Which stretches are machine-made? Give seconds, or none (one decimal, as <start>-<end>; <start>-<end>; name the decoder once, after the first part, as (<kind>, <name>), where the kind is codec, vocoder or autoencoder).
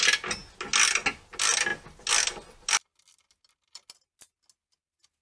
none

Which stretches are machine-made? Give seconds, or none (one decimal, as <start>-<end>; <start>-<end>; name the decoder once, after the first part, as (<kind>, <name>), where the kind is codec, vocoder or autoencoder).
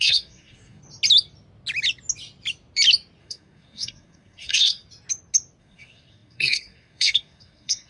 0.0-0.8 (codec, SNAC); 3.2-4.8; 5.6-7.9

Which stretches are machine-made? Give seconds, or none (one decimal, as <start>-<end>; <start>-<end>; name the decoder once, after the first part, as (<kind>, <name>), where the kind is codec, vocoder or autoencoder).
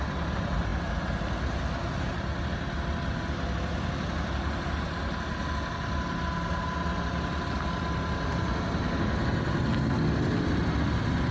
none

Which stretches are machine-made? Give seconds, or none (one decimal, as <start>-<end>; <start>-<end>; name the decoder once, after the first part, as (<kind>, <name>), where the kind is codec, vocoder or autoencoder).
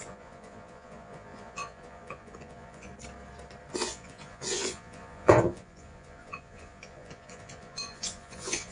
0.0-2.9 (vocoder, Vocos); 3.7-8.7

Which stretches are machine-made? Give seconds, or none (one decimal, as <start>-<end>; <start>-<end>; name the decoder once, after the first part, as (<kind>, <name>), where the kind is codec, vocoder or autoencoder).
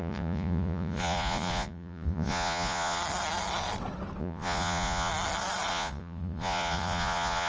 0.0-3.0 (vocoder, Vocos); 4.2-5.1; 5.7-7.5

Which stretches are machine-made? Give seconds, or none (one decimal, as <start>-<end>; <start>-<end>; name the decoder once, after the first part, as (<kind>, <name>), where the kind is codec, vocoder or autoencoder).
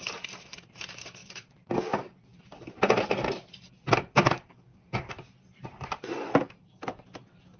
0.0-1.2 (vocoder, BigVGAN v2); 1.9-4.7; 6.1-7.6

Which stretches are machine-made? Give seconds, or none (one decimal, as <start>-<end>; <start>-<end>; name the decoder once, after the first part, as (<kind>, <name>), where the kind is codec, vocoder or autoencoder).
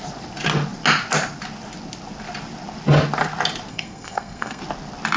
3.7-4.6 (codec, SNAC)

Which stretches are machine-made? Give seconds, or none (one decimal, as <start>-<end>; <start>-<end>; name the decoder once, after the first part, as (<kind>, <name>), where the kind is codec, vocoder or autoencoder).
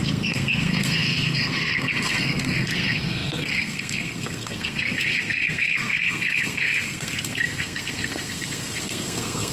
0.0-9.5 (codec, SNAC)